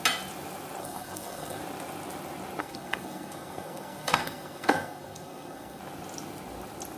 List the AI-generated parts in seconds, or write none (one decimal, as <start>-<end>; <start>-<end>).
0.8-1.6; 2.6-5.8